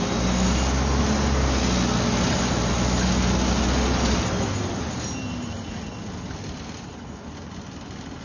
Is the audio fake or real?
real